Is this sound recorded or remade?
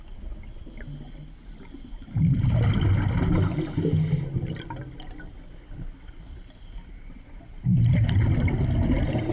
recorded